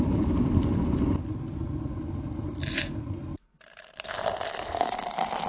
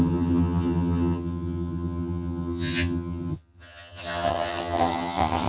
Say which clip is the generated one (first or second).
second